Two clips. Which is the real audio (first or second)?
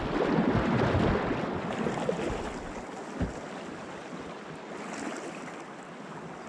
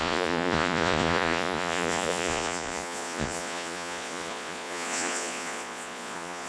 first